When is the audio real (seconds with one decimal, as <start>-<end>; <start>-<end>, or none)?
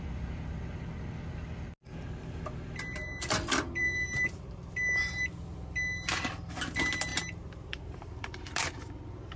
0.0-3.8; 5.1-7.1; 8.7-9.4